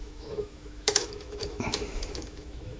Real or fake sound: fake